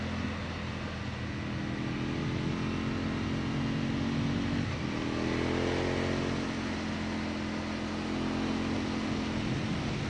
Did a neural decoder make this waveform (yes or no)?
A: no